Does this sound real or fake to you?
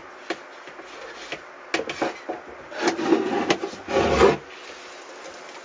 real